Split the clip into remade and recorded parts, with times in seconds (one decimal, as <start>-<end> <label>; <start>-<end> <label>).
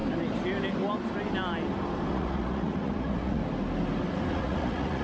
0.0-2.1 recorded; 2.1-3.4 remade; 3.4-4.3 recorded; 4.3-5.0 remade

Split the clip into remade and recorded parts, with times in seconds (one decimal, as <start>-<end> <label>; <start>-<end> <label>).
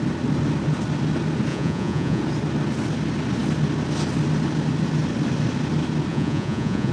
0.0-1.5 recorded; 1.5-2.2 remade; 2.2-6.1 recorded; 6.1-6.9 remade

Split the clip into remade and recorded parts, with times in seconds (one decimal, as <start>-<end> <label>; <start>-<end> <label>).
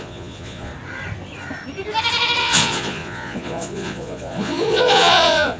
0.0-0.7 remade; 0.7-2.4 recorded; 2.4-5.6 remade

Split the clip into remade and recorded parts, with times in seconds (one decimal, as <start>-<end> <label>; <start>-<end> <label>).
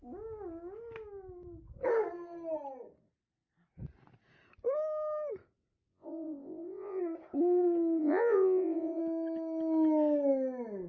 0.0-5.9 recorded; 5.9-7.0 remade; 7.0-8.0 recorded; 8.0-9.0 remade; 9.0-10.9 recorded